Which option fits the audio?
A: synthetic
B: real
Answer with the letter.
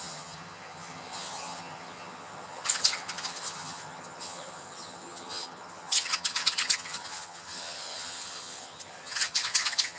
A